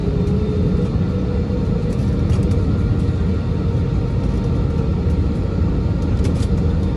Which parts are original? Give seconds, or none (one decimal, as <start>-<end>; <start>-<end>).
1.0-4.9; 5.6-7.0